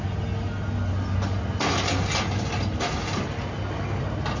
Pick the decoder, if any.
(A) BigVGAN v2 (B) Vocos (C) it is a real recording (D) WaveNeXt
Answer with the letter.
C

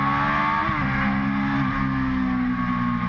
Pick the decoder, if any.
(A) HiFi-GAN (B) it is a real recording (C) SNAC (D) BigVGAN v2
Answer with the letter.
B